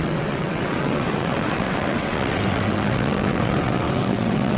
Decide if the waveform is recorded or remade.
remade